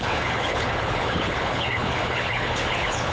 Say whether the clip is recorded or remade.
remade